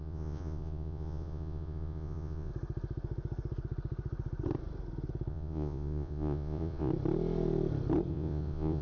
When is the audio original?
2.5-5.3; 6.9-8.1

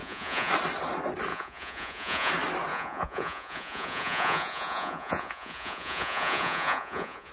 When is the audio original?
0.5-1.3; 2.3-2.7

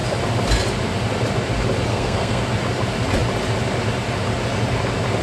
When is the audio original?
0.0-1.9; 2.4-5.2

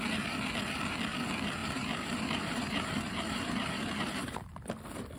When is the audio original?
0.0-1.6; 4.7-5.2